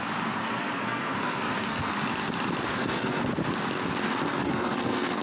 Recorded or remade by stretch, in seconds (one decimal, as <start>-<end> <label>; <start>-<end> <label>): 0.0-0.4 recorded; 0.4-1.9 remade; 1.9-2.7 recorded; 2.7-3.2 remade; 3.2-4.3 recorded; 4.3-5.2 remade